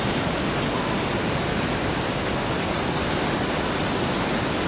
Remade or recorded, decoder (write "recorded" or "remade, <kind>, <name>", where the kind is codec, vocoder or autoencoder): recorded